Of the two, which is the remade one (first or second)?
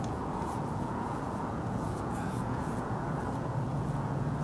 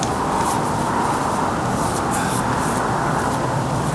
first